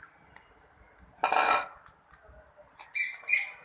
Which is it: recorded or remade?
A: recorded